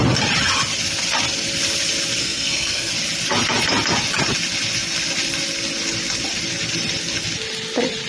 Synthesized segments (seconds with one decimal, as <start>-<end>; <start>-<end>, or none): 2.2-2.9